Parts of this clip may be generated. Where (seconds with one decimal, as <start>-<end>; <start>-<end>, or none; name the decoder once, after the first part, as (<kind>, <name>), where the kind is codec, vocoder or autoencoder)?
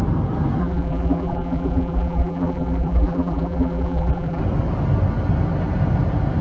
0.6-4.4 (vocoder, BigVGAN v2)